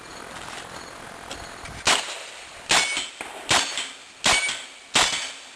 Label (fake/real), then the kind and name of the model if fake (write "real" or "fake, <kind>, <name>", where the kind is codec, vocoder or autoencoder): real